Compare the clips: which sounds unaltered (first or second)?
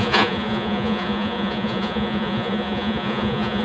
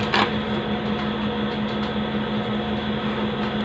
second